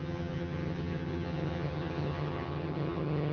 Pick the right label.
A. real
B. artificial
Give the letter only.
B